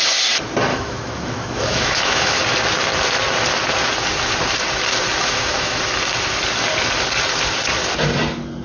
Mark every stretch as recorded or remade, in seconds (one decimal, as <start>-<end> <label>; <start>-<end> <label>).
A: 0.0-0.7 recorded; 0.7-2.4 remade; 2.4-5.2 recorded; 5.2-5.8 remade; 5.8-8.6 recorded